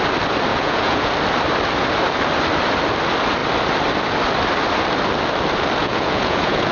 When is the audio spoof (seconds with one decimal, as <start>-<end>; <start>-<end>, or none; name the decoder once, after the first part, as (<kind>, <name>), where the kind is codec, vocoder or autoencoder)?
0.5-1.1 (vocoder, Vocos); 5.8-6.7